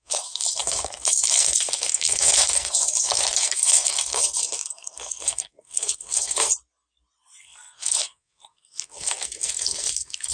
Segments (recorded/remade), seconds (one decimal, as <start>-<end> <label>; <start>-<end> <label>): 0.0-6.5 remade; 6.5-7.4 recorded; 7.4-10.3 remade